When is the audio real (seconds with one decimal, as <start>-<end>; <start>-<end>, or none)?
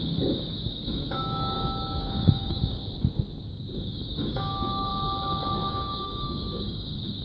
2.8-3.4; 4.9-5.7